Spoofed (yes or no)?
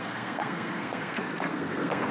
yes